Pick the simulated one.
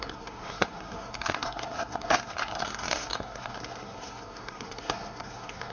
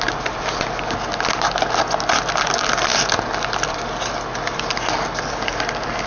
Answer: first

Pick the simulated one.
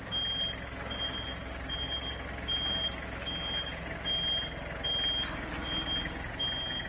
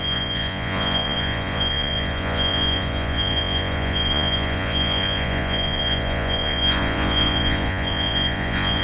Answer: second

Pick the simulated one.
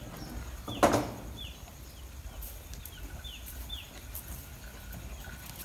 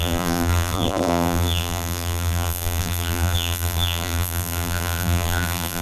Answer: second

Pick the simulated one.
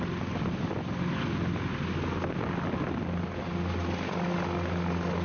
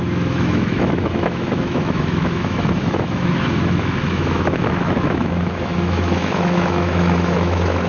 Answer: second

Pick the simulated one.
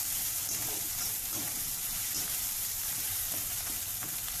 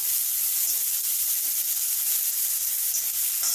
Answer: first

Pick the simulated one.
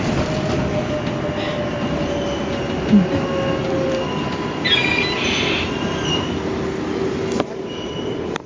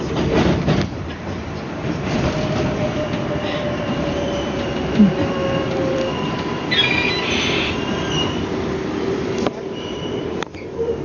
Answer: second